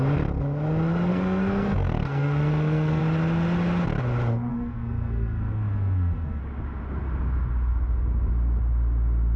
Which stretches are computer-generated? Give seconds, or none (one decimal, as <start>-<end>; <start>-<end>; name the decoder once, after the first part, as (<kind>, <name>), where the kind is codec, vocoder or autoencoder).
1.1-3.0 (codec, SNAC); 4.5-6.4